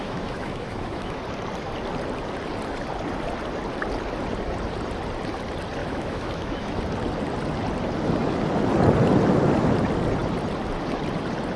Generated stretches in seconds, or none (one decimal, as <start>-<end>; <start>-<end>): 0.0-1.2; 5.8-6.8